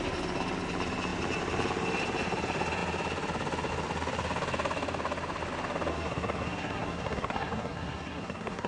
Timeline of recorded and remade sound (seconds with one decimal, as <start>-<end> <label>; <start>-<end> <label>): 0.0-5.9 recorded; 5.9-8.7 remade